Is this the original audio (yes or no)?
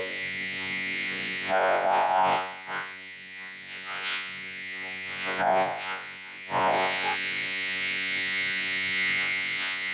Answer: no